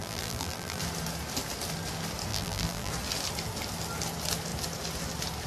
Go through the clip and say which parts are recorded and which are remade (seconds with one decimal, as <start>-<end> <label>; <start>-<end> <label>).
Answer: 0.0-0.8 remade; 0.8-2.3 recorded; 2.3-2.9 remade; 2.9-5.5 recorded